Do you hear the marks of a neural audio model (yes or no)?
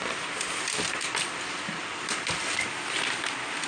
no